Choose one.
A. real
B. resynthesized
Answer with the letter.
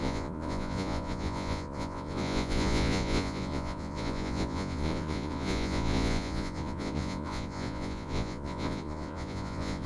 B